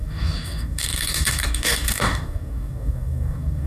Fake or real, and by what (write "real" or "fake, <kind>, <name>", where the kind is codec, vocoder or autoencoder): fake, codec, DAC